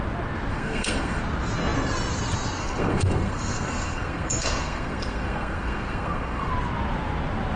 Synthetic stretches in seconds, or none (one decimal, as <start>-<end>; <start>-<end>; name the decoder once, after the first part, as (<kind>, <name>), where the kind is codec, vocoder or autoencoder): 0.5-1.2 (codec, SNAC); 2.6-6.5